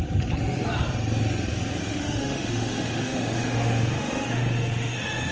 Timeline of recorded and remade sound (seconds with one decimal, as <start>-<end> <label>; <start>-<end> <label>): 0.0-1.8 recorded; 1.8-5.3 remade